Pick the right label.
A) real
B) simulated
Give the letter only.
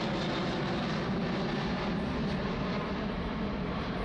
A